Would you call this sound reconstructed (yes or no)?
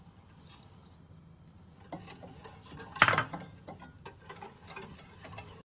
no